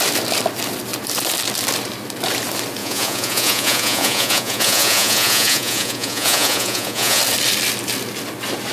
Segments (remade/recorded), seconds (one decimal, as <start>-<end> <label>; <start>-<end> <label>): 0.0-2.8 recorded; 2.8-7.2 remade; 7.2-8.7 recorded